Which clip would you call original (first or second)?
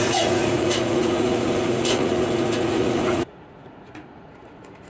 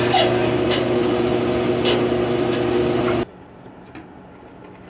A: second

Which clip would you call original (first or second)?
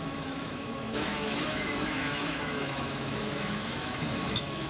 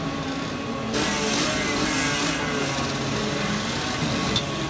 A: second